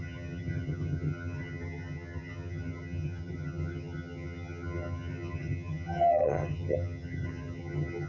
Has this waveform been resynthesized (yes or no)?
yes